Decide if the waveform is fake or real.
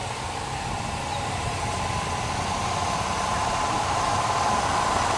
real